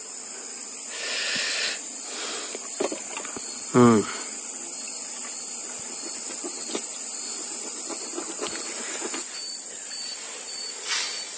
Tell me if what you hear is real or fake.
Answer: real